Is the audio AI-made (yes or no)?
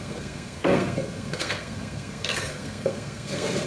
yes